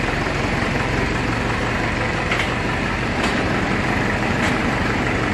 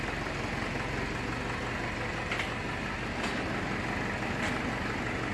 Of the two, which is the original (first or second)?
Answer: second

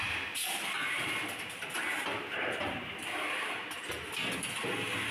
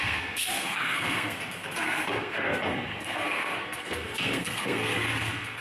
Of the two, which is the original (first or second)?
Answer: first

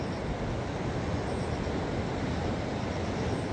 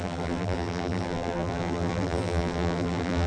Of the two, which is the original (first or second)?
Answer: first